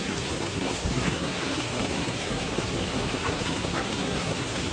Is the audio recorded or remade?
remade